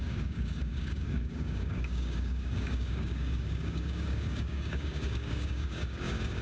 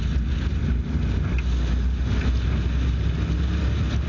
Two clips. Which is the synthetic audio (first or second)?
first